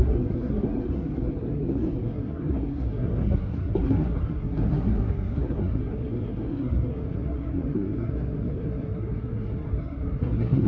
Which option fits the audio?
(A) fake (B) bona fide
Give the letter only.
A